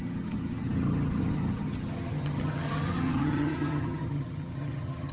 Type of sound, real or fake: fake